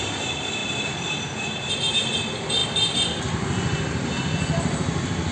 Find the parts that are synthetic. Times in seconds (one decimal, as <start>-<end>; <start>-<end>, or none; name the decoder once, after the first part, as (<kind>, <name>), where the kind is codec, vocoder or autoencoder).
none